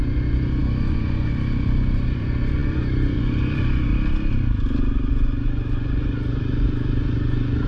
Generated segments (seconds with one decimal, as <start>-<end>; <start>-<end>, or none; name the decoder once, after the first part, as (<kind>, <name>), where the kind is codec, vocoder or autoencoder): 0.0-3.9 (vocoder, Vocos); 5.1-7.7